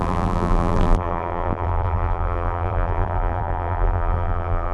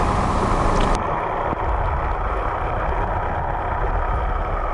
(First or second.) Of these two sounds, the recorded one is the second